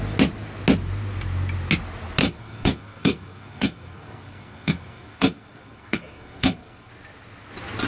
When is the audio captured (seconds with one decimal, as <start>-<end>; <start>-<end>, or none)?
0.0-2.2; 6.9-7.9